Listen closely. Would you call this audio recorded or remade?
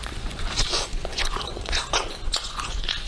remade